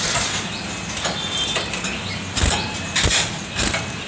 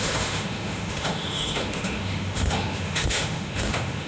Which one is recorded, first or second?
first